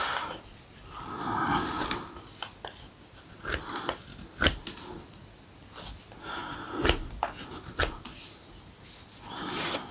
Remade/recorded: recorded